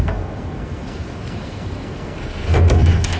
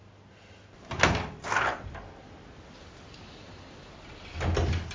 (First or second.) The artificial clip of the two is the first